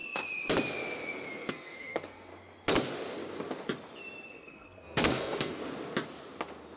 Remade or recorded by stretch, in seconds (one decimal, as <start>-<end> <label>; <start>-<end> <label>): 0.0-1.5 recorded; 1.5-2.3 remade; 2.3-4.3 recorded; 4.3-5.6 remade; 5.6-6.8 recorded